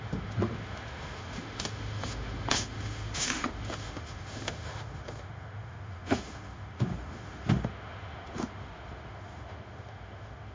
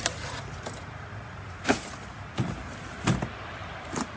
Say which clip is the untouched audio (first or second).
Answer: second